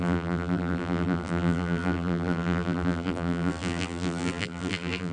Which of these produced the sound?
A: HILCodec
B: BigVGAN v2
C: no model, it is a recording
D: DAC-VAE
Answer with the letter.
B